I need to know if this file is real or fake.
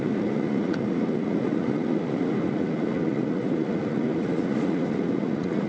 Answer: fake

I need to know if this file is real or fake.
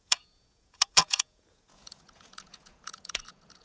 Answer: fake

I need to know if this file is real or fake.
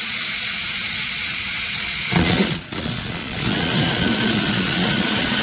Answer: fake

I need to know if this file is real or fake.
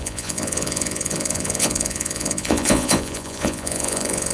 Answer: fake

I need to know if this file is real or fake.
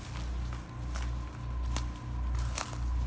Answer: real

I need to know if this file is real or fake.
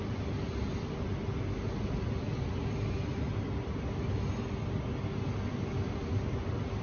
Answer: real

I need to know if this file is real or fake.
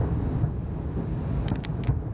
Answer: real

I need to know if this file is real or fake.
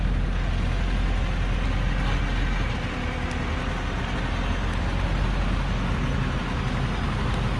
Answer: real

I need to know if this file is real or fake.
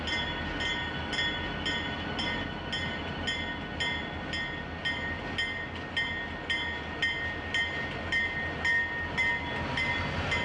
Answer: real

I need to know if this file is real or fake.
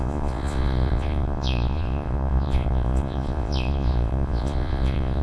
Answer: fake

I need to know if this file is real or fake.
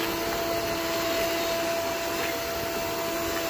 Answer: real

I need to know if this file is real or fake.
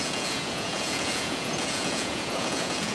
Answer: fake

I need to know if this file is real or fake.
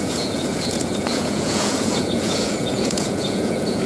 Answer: fake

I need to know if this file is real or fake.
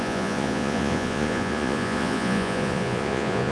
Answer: fake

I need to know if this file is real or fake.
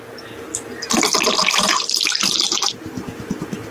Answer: real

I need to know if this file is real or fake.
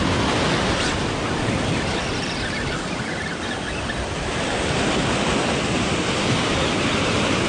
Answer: real